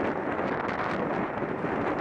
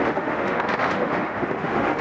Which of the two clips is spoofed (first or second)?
second